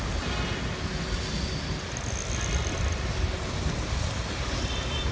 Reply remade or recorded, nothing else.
recorded